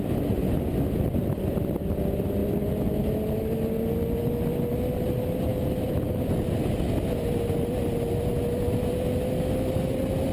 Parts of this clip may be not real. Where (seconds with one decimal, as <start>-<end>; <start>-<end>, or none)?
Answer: none